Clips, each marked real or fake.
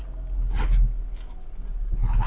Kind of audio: real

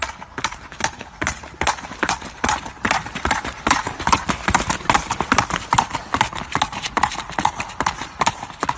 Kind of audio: real